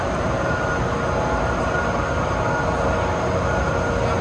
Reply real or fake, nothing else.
real